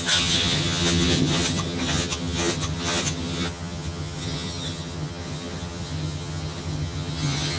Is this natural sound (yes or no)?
no